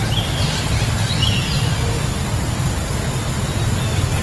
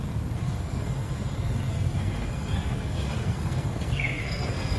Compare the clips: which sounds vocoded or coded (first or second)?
second